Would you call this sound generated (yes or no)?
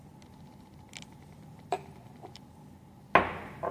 no